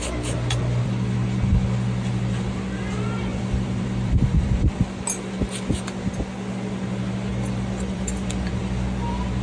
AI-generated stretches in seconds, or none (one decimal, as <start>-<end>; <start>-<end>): 3.3-4.8; 7.3-8.6